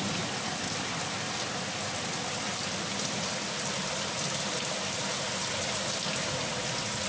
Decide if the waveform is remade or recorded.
recorded